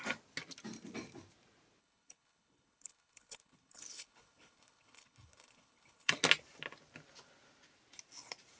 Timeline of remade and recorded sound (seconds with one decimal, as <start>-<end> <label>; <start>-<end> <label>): 0.0-1.8 recorded; 1.8-6.2 remade; 6.2-8.6 recorded